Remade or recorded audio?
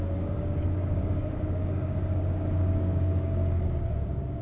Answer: remade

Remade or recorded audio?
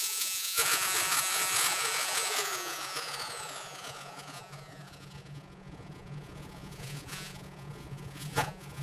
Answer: remade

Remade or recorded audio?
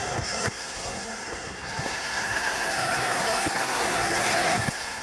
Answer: remade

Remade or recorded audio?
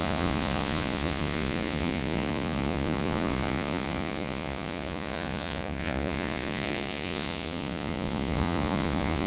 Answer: remade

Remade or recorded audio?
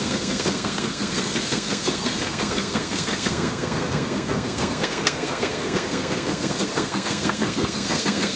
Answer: remade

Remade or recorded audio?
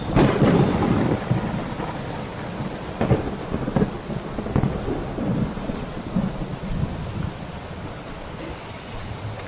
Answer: recorded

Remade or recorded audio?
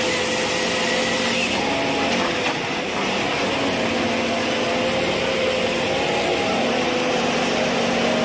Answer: recorded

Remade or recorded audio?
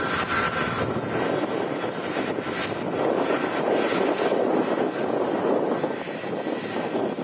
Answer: recorded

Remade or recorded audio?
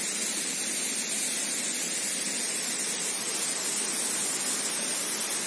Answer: recorded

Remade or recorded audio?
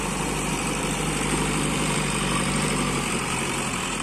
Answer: remade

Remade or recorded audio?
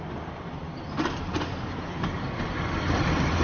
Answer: remade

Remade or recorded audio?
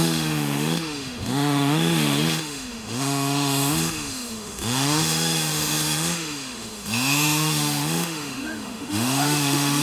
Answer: remade